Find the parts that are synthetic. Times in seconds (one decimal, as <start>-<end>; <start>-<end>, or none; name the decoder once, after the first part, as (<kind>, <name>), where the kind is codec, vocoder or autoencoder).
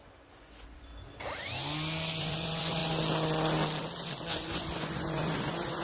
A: 0.0-0.9 (vocoder, Vocos); 2.2-2.8; 4.3-5.8